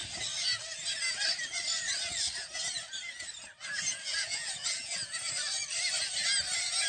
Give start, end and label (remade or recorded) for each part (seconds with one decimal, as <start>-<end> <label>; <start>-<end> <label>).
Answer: 0.0-3.9 recorded; 3.9-5.3 remade; 5.3-6.9 recorded